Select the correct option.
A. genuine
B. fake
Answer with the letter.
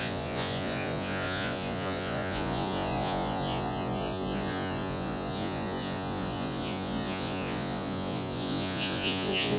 B